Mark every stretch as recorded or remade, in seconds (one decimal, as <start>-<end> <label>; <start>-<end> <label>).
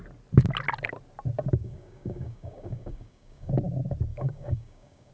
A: 0.0-1.6 recorded; 1.6-3.5 remade; 3.5-4.1 recorded; 4.1-5.1 remade